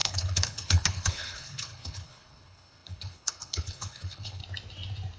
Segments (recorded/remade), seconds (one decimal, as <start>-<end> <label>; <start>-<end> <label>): 0.0-4.4 remade; 4.4-5.2 recorded